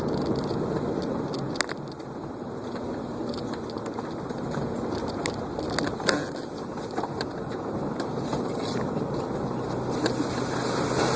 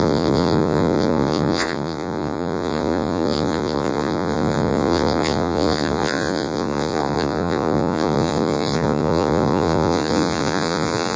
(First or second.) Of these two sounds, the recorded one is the first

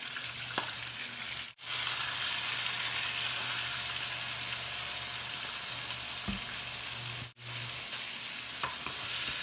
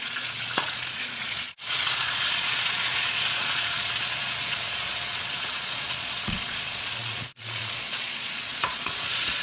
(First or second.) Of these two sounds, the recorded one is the first